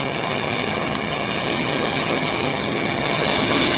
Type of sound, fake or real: fake